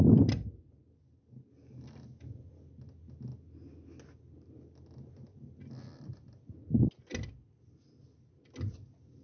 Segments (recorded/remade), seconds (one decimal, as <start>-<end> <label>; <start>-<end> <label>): 0.0-9.2 recorded